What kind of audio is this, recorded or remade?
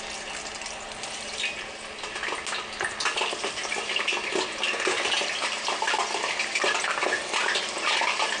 recorded